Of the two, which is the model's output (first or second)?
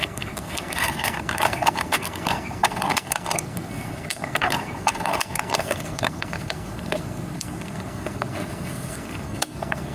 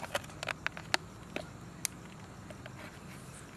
first